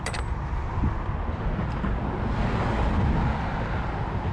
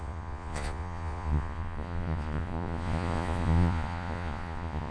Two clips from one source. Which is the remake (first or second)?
second